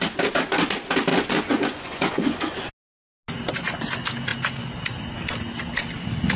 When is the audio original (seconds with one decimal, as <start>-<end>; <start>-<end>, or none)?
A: 0.0-1.1; 2.7-6.4